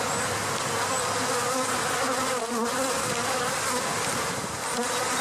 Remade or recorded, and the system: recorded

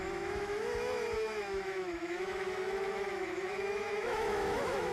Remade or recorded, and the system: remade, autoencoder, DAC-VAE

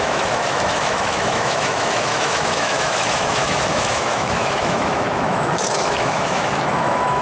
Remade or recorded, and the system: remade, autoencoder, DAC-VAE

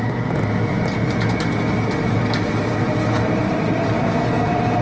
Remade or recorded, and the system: recorded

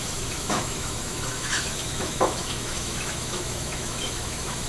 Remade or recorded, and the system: remade, autoencoder, DAC-VAE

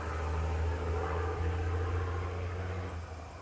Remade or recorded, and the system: recorded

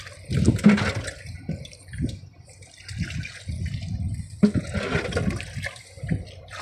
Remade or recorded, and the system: recorded